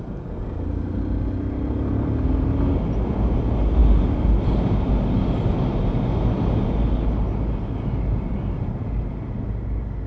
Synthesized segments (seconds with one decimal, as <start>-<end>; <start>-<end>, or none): none